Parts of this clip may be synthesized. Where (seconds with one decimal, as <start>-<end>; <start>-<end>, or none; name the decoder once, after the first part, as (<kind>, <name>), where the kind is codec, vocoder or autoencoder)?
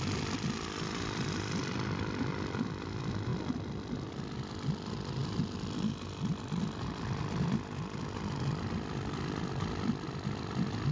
none